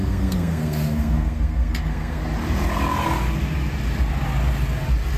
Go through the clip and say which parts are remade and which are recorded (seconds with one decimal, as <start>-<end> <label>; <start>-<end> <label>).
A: 0.0-2.2 remade; 2.2-5.2 recorded